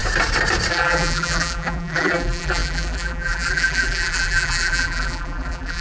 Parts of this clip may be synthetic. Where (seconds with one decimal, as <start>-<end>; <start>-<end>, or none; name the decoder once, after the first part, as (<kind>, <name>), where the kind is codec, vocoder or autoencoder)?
0.7-5.8 (vocoder, BigVGAN v2)